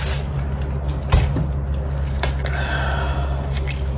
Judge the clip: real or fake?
real